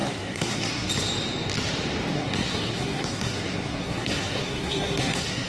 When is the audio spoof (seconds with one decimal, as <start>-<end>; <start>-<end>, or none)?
0.0-0.9; 2.1-5.5